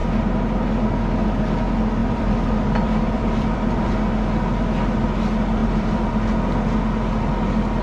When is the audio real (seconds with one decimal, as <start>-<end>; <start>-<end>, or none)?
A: 0.0-2.0; 3.9-5.6; 6.1-7.8